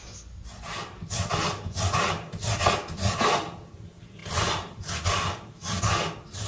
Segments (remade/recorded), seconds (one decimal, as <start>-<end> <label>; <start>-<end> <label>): 0.0-6.5 recorded